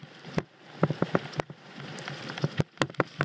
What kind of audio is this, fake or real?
fake